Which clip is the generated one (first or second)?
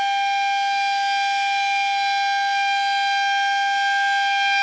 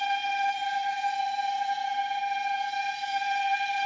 second